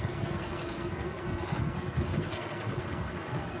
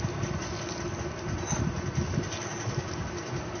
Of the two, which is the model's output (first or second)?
first